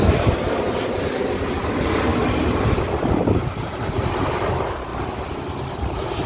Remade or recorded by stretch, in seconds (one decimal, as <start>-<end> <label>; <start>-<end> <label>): 0.0-4.9 remade; 4.9-5.7 recorded; 5.7-6.3 remade